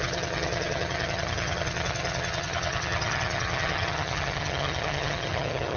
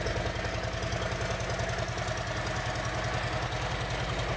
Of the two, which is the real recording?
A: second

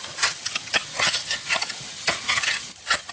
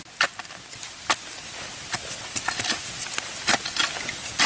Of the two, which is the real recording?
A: second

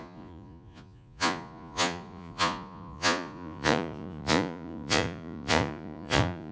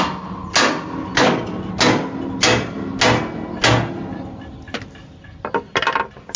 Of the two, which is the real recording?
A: second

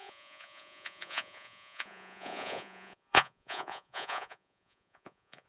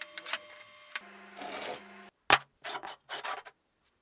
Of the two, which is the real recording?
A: second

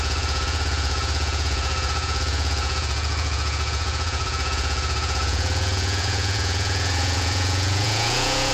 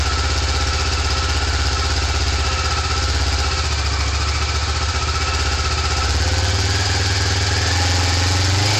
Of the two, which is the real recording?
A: second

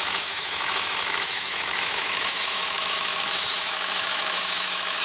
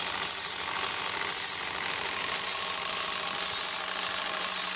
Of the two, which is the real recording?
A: second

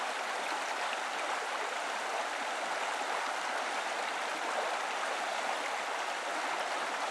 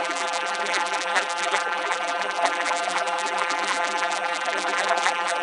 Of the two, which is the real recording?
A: first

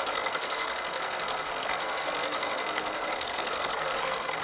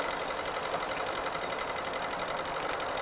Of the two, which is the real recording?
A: second